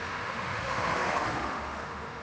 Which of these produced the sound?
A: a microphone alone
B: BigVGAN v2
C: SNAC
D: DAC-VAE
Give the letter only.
D